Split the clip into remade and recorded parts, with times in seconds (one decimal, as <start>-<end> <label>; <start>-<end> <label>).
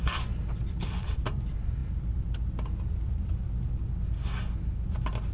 0.0-1.8 remade; 1.8-5.3 recorded